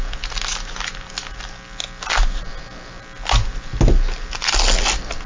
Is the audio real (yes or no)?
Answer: yes